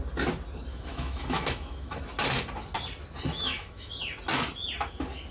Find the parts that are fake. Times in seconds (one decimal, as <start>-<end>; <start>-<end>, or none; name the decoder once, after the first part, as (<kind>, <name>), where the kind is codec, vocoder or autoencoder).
0.7-2.0 (autoencoder, DAC-VAE); 3.3-3.9